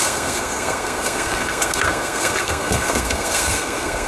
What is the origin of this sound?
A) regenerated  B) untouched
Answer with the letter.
A